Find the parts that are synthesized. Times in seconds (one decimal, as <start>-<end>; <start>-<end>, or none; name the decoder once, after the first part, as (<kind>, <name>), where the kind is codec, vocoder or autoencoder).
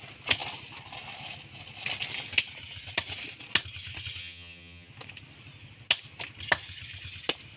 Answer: 4.2-4.9 (vocoder, HiFi-GAN)